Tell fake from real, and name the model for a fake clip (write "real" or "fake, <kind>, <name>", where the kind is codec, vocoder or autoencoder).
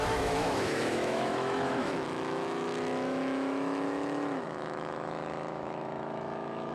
fake, autoencoder, DAC-VAE